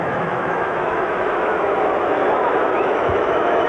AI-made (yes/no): yes